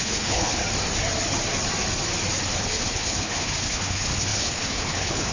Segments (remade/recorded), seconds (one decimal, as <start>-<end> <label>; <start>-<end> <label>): 0.0-0.6 remade; 0.6-2.6 recorded; 2.6-5.3 remade